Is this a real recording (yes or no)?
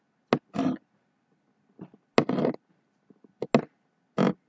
yes